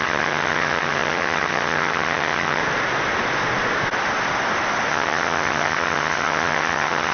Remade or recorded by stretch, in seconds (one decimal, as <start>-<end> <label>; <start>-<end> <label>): 0.0-2.6 remade; 2.6-4.9 recorded; 4.9-7.1 remade